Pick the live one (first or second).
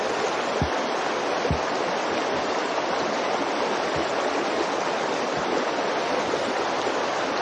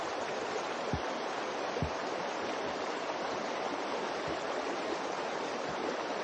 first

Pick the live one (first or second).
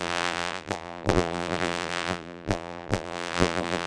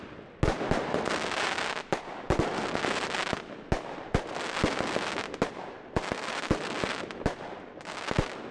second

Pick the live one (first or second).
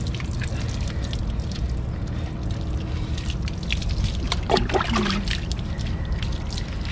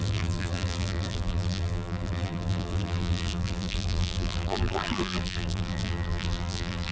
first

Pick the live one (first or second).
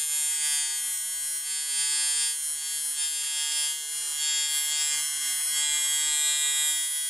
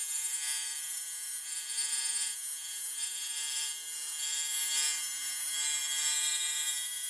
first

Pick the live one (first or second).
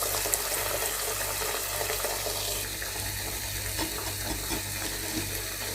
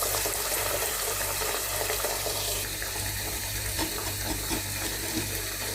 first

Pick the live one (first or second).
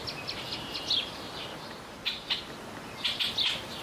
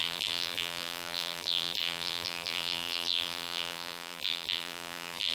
first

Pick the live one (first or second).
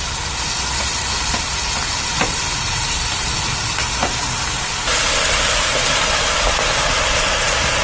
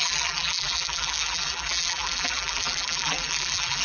first